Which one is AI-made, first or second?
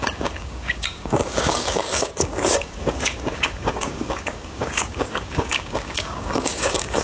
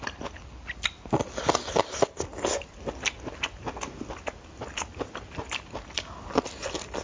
first